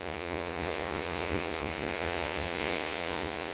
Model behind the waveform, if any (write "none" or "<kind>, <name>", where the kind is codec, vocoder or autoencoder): vocoder, Vocos